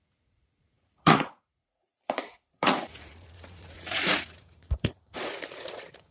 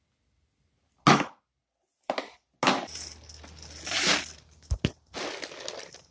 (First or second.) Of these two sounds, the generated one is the first